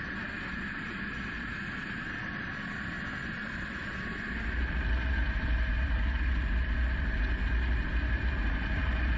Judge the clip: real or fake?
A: real